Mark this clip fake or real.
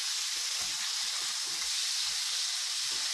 real